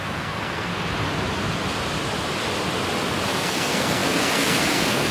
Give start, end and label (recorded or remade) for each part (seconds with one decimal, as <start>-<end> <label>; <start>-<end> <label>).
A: 0.0-0.7 remade; 0.7-3.3 recorded; 3.3-5.1 remade